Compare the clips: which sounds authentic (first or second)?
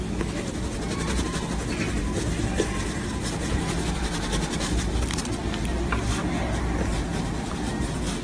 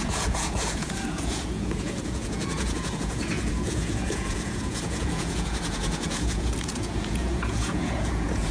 first